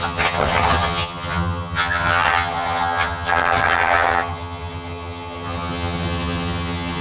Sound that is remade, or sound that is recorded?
remade